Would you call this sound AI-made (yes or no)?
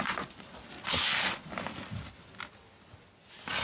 no